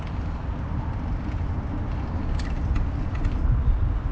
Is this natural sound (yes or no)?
yes